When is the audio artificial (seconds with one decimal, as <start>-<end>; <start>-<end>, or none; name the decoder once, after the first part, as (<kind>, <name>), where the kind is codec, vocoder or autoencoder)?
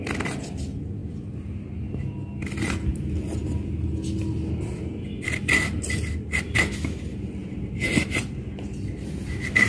none